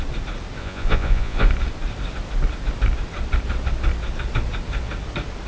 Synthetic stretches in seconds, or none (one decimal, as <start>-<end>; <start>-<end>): 0.6-1.5